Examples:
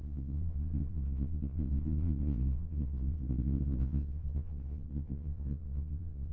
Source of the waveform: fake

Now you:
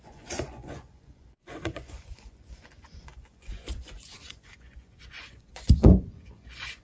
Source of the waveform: fake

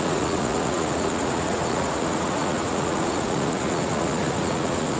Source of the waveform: fake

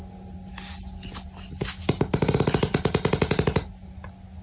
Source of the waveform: real